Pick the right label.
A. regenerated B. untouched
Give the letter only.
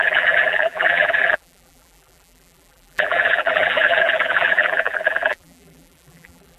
A